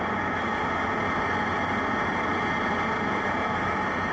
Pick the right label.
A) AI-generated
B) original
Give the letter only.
B